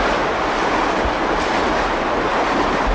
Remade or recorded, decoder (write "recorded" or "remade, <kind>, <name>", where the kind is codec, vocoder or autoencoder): recorded